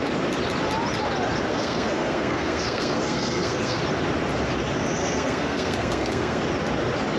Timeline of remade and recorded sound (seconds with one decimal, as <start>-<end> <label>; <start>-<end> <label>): 0.0-1.5 recorded; 1.5-3.8 remade; 3.8-5.0 recorded; 5.0-6.4 remade; 6.4-7.2 recorded